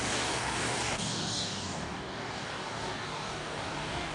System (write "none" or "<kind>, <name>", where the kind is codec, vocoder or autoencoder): codec, DAC